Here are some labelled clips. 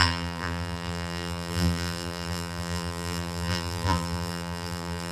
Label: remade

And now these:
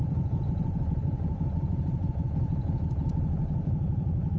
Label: remade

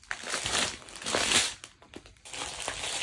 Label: recorded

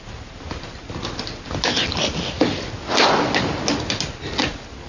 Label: recorded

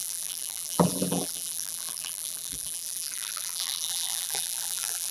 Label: remade